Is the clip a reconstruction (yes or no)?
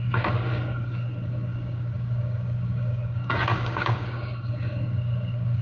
yes